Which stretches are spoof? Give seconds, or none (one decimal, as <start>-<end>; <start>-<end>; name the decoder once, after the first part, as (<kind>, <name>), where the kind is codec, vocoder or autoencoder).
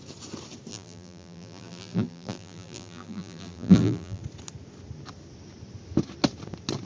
0.7-4.2 (vocoder, BigVGAN v2)